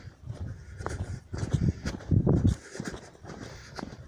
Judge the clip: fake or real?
fake